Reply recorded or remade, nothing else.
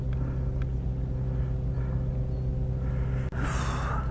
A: recorded